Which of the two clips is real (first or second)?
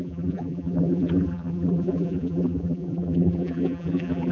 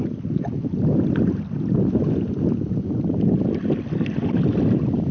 second